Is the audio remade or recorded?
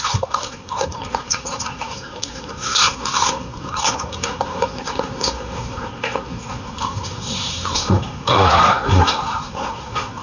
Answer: remade